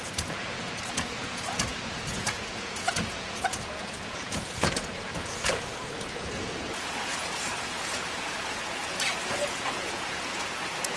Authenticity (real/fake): fake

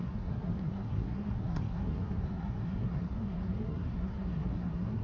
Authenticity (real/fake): fake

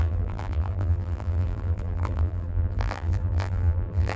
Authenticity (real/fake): fake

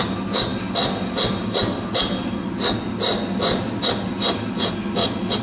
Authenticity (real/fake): real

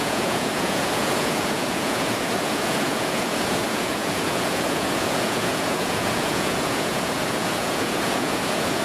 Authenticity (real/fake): fake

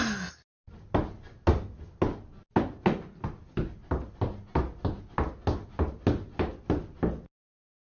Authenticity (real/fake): real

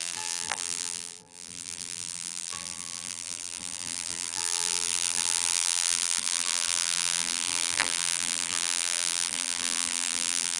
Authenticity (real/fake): fake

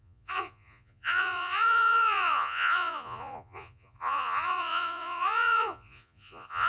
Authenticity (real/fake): fake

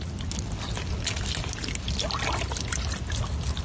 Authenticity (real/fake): real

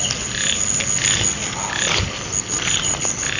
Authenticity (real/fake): real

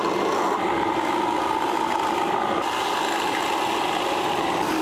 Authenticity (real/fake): real